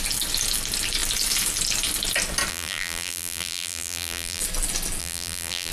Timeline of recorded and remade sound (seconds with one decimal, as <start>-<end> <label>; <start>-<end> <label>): 0.0-2.5 recorded; 2.5-4.4 remade; 4.4-5.0 recorded; 5.0-5.7 remade